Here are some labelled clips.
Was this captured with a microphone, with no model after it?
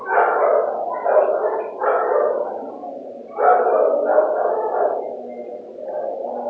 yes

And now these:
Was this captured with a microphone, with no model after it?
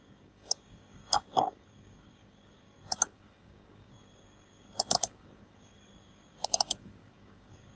no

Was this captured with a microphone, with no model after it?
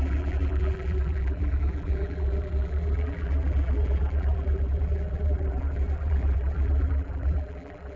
no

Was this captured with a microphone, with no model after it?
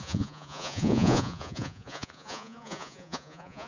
no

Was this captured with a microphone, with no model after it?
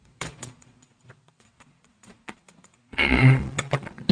no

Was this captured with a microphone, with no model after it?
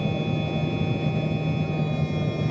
yes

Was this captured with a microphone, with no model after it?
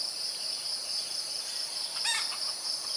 no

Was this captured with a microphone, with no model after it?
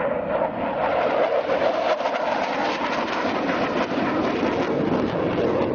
yes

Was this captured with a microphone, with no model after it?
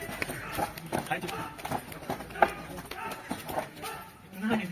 yes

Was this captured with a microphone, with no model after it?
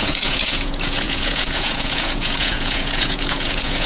no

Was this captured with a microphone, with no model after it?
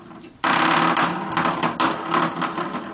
yes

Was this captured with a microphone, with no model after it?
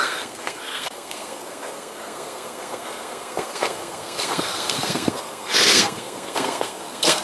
no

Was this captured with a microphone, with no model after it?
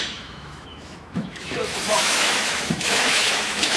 no